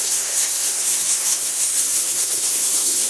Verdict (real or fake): fake